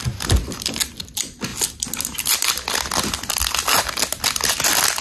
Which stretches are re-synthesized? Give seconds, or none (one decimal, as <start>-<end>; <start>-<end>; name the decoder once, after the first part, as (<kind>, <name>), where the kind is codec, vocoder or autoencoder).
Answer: none